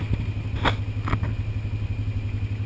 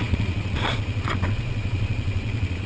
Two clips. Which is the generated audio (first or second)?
second